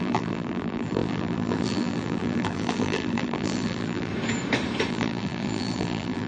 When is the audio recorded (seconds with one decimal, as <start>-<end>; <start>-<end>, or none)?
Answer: 4.1-4.9